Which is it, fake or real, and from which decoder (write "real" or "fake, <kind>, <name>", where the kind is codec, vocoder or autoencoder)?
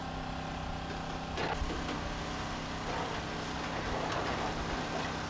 real